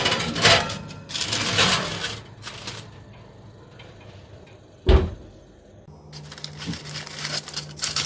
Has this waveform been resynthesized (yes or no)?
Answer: no